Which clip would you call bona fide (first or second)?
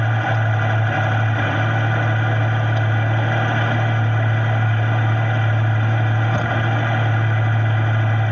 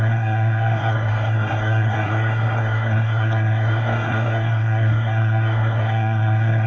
first